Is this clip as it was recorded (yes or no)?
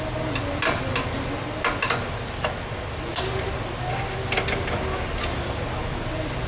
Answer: yes